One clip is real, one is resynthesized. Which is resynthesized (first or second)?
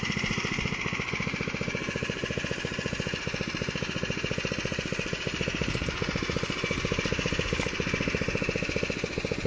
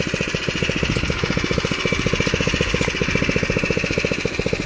first